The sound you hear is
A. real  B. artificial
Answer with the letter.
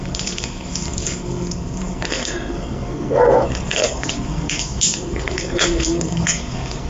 B